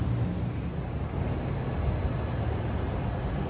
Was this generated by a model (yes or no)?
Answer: no